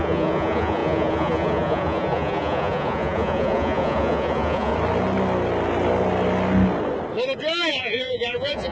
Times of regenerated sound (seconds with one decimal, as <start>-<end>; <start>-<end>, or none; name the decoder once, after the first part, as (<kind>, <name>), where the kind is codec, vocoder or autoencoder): 0.0-4.7 (vocoder, Vocos); 7.7-8.7